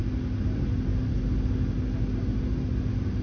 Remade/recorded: recorded